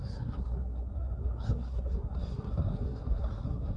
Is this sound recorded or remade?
remade